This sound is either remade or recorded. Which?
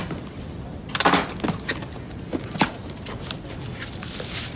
recorded